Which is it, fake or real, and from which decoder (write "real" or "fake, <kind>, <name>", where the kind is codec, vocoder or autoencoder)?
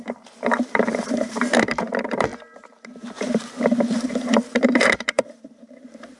fake, vocoder, BigVGAN v2